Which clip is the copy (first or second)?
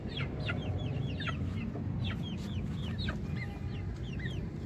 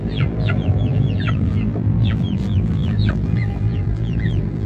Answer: second